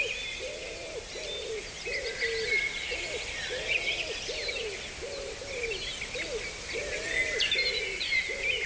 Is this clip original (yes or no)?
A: yes